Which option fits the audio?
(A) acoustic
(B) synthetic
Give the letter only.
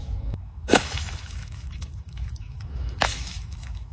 B